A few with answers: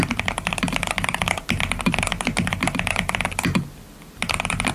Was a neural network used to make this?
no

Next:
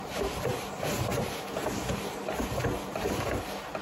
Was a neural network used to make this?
no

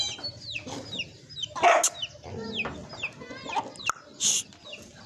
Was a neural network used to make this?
no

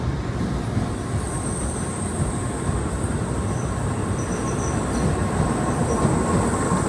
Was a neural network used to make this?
no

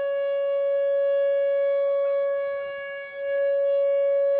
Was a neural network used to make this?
no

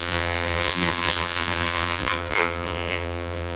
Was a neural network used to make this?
yes